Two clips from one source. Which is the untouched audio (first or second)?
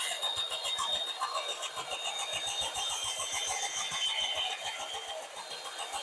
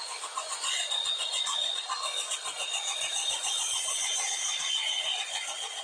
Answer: first